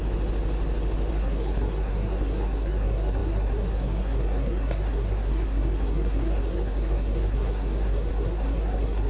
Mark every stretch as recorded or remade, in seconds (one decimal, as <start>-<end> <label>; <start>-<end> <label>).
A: 0.0-1.1 recorded; 1.1-9.1 remade

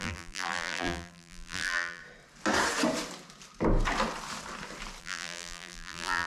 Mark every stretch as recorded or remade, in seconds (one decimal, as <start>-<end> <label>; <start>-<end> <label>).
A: 0.0-2.0 remade; 2.0-5.0 recorded; 5.0-6.3 remade

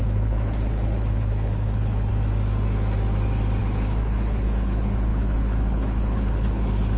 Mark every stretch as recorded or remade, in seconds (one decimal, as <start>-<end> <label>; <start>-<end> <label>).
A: 0.0-2.1 remade; 2.1-3.6 recorded; 3.6-7.0 remade

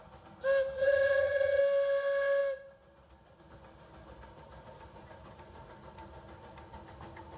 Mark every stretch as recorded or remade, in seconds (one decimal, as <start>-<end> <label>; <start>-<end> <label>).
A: 0.0-0.8 recorded; 0.8-1.6 remade; 1.6-7.4 recorded

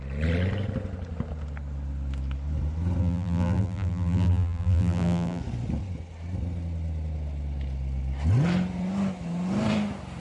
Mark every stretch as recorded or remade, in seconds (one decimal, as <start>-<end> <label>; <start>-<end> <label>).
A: 0.0-3.0 recorded; 3.0-5.4 remade; 5.4-10.2 recorded

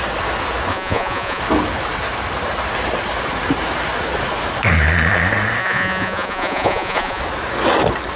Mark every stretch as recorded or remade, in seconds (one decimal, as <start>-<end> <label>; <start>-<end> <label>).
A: 0.0-0.7 recorded; 0.7-1.4 remade; 1.4-5.6 recorded; 5.6-7.2 remade; 7.2-8.2 recorded

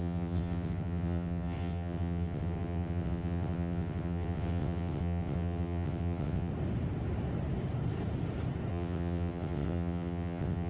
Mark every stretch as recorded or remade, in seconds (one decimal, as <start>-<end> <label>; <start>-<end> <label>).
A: 0.0-6.5 remade; 6.5-8.7 recorded; 8.7-10.7 remade